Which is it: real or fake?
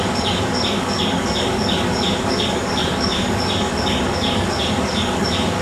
fake